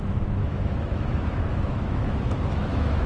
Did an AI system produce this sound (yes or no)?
yes